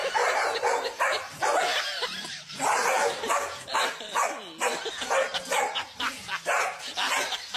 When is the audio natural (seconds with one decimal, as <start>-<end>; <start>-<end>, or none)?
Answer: 0.0-7.6